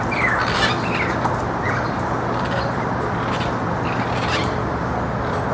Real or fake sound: real